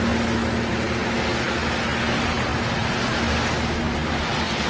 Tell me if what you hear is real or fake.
real